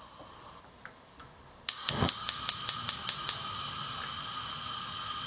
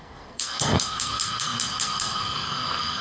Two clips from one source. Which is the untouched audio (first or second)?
first